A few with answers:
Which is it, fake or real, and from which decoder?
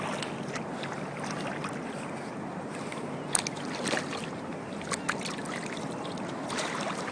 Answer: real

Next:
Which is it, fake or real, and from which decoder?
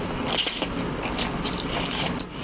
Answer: real